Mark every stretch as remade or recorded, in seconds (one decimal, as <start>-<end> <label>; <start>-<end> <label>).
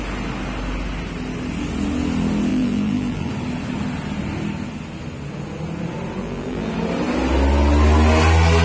0.0-2.5 recorded; 2.5-3.3 remade; 3.3-6.2 recorded; 6.2-6.7 remade; 6.7-8.6 recorded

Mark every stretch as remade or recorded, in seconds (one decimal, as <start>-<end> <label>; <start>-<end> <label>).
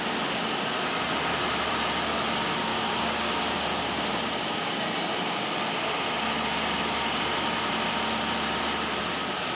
0.0-2.7 recorded; 2.7-3.4 remade; 3.4-9.5 recorded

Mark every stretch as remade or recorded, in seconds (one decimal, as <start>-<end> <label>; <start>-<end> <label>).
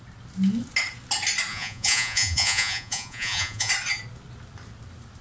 0.0-1.5 recorded; 1.5-3.7 remade; 3.7-5.2 recorded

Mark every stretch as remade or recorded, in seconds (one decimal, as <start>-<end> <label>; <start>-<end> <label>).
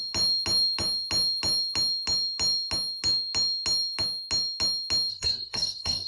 0.0-5.1 recorded; 5.1-6.1 remade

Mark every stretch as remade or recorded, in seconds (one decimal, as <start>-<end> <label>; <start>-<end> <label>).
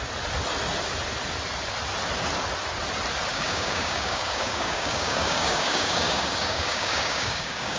0.0-3.3 recorded; 3.3-7.8 remade